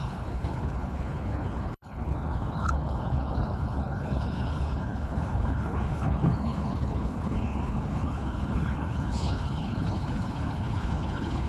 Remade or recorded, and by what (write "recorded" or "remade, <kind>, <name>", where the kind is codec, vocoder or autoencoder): remade, codec, HILCodec